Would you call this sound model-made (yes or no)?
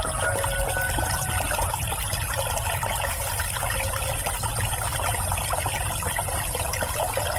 no